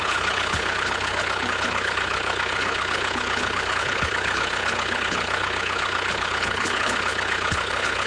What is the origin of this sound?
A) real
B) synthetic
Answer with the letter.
B